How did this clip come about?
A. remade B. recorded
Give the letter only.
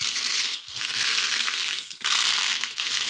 A